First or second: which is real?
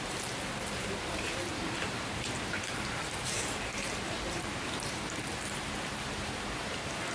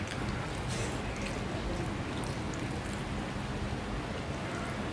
second